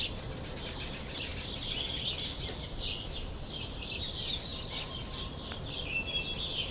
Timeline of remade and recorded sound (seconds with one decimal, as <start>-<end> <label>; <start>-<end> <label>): 0.0-6.7 recorded